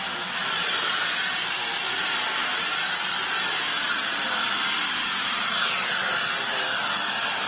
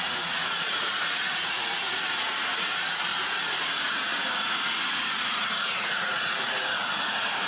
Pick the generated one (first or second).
second